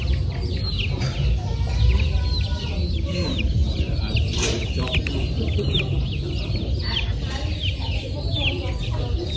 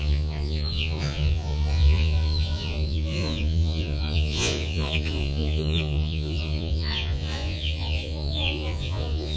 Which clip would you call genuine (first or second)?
first